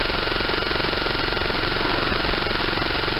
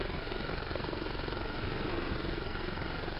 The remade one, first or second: second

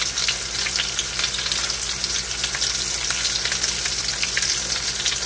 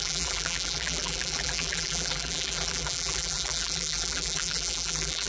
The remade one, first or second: second